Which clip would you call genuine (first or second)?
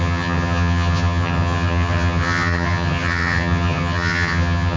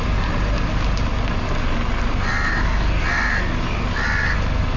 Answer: second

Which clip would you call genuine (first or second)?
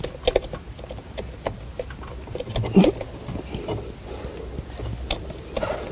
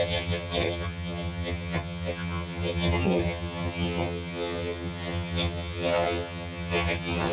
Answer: first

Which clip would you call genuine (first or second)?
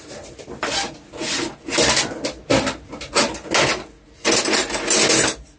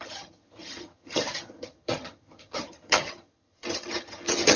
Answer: first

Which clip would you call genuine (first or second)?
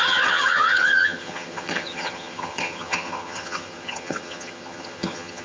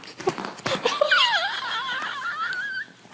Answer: second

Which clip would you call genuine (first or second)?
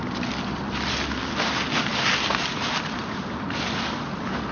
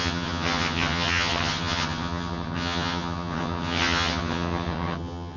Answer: first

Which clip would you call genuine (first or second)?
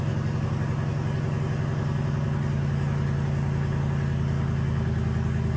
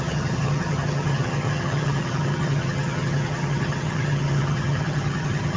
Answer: first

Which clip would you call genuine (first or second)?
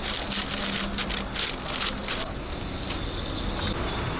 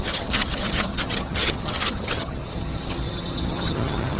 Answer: first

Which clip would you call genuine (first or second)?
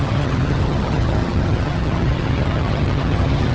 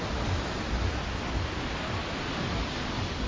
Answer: second